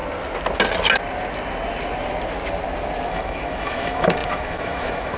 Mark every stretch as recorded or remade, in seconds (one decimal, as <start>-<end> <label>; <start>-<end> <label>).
0.0-3.1 recorded; 3.1-5.2 remade